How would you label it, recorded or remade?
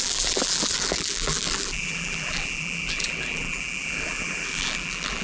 remade